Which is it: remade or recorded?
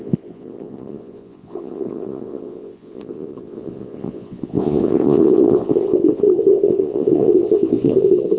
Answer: remade